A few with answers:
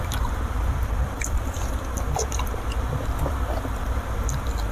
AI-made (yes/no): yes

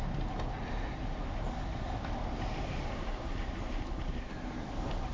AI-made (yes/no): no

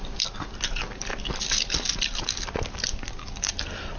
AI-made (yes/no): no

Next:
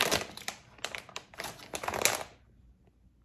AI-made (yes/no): no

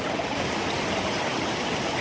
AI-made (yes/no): yes